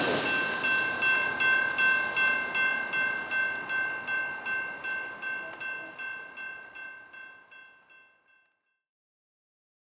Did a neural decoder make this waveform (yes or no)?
no